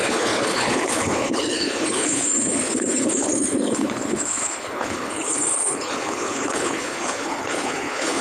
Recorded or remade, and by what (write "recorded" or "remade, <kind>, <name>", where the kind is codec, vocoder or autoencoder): remade, codec, HILCodec